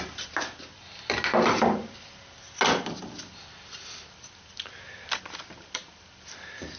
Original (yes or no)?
yes